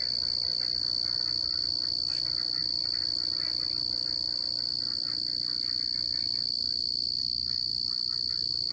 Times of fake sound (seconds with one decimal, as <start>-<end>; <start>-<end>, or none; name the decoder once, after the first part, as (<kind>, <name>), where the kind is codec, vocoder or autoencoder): 7.2-7.7 (codec, DAC)